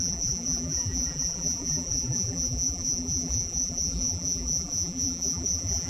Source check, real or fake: fake